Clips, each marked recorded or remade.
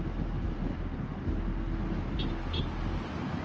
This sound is recorded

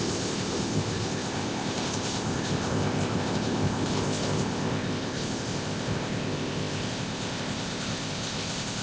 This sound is remade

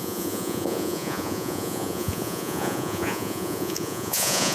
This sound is remade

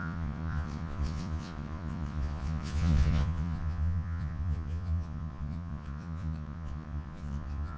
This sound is remade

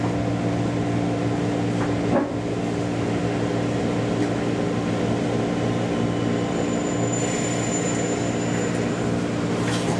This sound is recorded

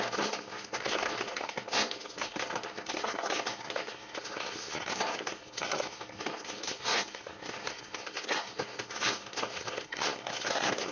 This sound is remade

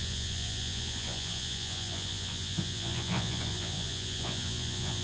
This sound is remade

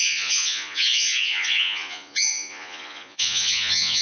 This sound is remade